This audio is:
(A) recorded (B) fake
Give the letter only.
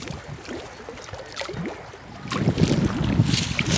A